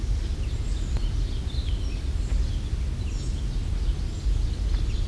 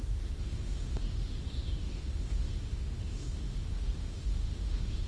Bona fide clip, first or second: first